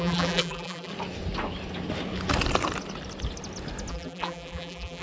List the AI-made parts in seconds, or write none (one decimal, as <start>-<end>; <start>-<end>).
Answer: 0.0-0.9; 3.9-5.0